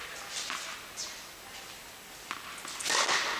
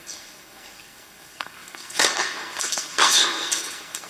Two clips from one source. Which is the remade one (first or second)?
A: second